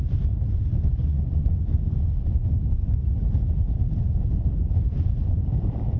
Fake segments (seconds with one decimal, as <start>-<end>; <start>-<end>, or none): 1.0-1.9